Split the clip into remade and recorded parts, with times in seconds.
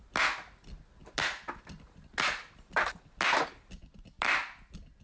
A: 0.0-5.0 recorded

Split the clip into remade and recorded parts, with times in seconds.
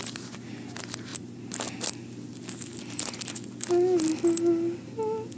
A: 0.0-5.4 recorded